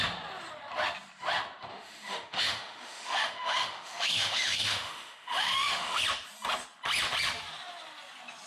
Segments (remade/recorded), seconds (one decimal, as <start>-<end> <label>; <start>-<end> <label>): 0.0-1.7 recorded; 1.7-6.0 remade; 6.0-8.5 recorded